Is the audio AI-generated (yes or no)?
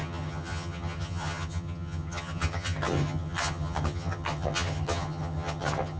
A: yes